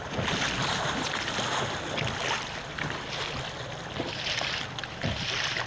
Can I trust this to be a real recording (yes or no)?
yes